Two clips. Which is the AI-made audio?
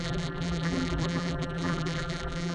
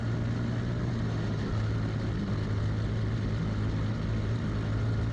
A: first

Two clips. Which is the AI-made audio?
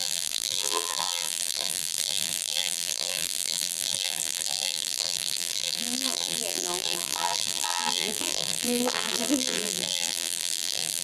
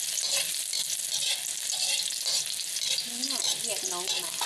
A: first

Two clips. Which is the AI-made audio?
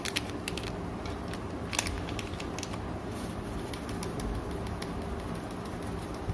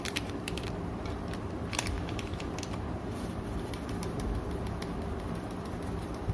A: second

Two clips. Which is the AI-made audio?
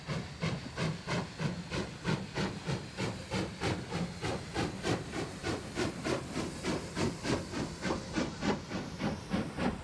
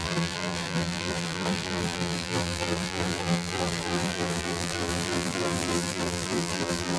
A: second